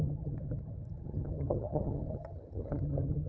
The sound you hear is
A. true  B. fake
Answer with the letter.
B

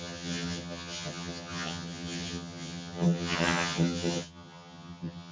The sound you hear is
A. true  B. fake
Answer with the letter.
B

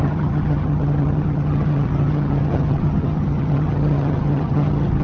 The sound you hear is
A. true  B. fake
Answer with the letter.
B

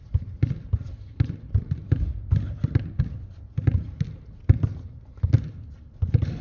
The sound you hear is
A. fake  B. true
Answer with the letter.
B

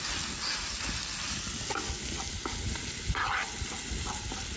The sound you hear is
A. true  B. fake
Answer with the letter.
A